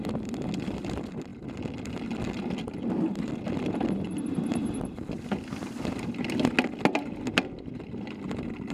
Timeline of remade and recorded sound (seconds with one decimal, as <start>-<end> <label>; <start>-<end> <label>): 0.0-8.7 recorded